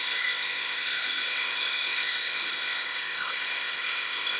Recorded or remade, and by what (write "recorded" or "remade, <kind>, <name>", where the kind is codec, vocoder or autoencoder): remade, codec, ZipCodec